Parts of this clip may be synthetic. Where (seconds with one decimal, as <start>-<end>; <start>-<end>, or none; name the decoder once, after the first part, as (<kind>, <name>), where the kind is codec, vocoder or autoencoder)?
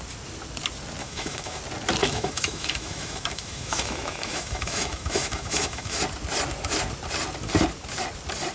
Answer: 1.0-1.6 (autoencoder, DAC-VAE); 2.0-6.0